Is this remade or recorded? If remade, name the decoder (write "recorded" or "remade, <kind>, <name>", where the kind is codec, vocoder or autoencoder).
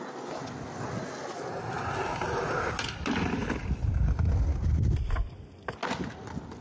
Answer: recorded